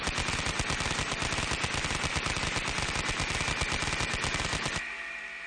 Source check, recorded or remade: recorded